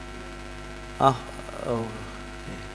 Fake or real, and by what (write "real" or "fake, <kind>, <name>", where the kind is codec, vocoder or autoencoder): fake, vocoder, BigVGAN v2